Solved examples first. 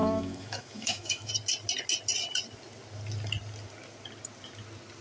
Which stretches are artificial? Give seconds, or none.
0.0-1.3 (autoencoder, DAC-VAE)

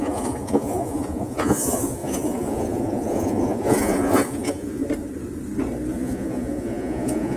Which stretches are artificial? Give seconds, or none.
0.0-4.8 (vocoder, Vocos); 5.9-7.4